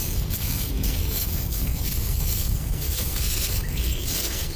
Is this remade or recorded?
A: remade